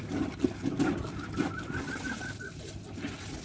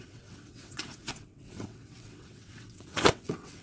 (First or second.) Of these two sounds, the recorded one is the first